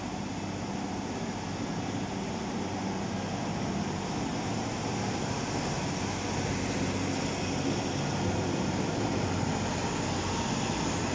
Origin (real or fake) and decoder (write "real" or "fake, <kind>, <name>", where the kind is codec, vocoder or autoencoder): real